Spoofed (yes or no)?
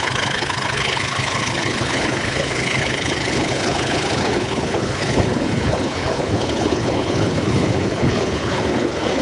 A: yes